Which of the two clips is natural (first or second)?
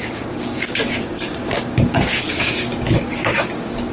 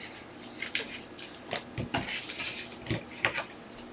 second